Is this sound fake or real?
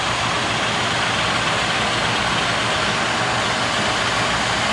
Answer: real